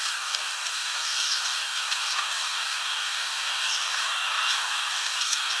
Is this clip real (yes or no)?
no